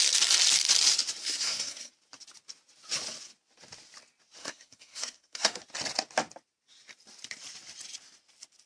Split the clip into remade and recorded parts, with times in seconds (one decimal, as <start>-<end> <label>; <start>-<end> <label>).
0.0-1.2 recorded; 1.2-1.9 remade; 1.9-4.4 recorded; 4.4-5.6 remade; 5.6-8.7 recorded